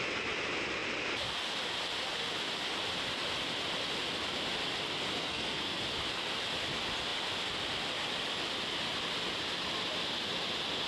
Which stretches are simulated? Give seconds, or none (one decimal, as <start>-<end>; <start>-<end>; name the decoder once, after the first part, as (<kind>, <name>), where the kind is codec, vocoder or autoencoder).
5.2-5.8 (codec, SNAC)